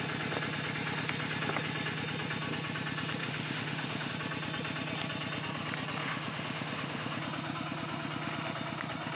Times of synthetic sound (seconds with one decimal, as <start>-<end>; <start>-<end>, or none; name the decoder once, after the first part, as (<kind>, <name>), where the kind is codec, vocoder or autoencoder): 3.2-4.1 (autoencoder, DAC-VAE); 6.0-7.2